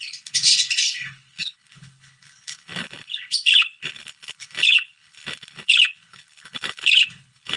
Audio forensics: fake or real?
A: fake